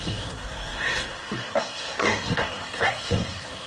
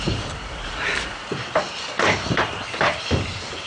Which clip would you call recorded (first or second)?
second